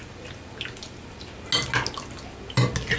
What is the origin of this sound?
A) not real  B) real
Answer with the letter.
B